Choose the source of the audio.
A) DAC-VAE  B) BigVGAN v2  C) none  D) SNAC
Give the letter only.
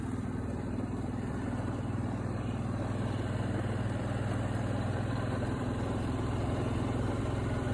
B